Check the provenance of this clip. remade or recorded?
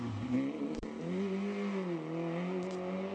recorded